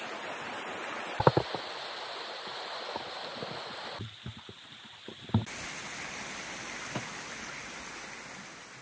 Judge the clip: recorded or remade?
recorded